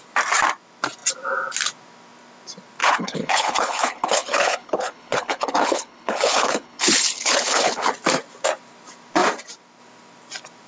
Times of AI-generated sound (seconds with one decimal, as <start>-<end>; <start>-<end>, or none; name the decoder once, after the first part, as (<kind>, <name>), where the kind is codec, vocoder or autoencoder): 2.8-7.9 (codec, HILCodec)